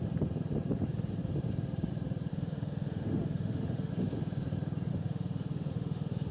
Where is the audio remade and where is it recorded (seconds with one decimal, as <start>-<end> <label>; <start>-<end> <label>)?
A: 0.0-2.3 recorded; 2.3-3.9 remade; 3.9-4.9 recorded; 4.9-6.3 remade